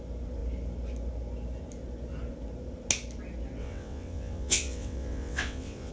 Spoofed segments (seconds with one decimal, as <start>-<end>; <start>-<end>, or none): 3.6-5.9